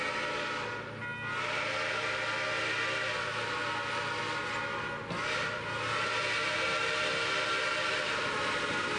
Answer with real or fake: real